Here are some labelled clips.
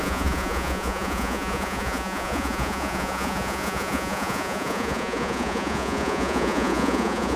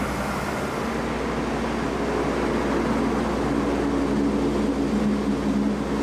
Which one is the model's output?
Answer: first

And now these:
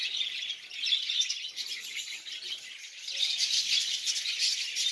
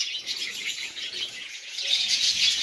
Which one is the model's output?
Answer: second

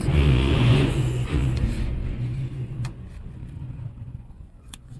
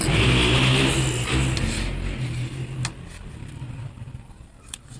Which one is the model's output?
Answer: first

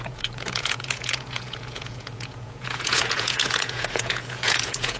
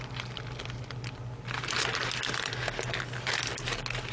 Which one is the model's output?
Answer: first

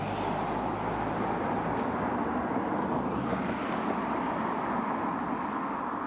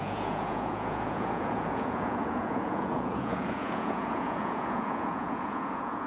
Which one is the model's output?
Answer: second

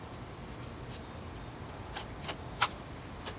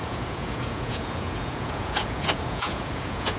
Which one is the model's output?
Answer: second